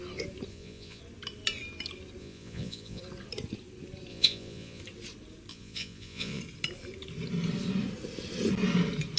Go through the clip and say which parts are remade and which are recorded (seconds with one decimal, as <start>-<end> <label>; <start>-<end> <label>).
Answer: 0.0-0.5 recorded; 0.5-1.0 remade; 1.0-2.2 recorded; 2.2-3.0 remade; 3.0-4.1 recorded; 4.1-4.8 remade; 4.8-5.5 recorded; 5.5-6.4 remade; 6.4-9.2 recorded